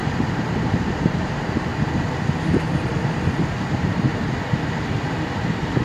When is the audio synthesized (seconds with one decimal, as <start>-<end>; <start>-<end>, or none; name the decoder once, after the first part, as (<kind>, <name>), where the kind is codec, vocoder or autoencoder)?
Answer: 0.0-1.7 (vocoder, BigVGAN v2); 2.7-4.1; 5.3-5.8